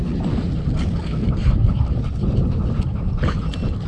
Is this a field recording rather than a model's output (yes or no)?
yes